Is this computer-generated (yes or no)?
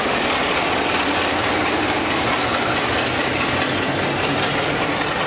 no